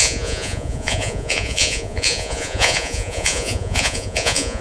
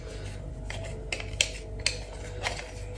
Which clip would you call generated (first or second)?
first